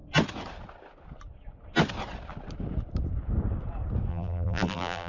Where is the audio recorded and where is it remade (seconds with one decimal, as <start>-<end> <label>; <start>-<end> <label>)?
0.0-4.1 recorded; 4.1-5.1 remade